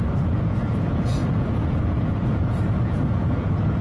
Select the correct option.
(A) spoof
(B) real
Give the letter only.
A